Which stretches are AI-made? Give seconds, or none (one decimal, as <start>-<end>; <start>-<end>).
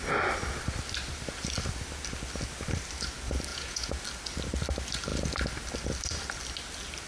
3.5-4.0